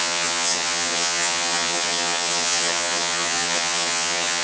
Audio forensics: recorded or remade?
remade